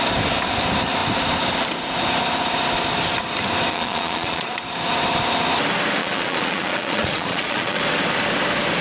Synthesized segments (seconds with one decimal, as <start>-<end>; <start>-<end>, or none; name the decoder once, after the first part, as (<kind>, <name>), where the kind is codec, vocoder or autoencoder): 3.7-4.6 (vocoder, Vocos); 6.0-7.8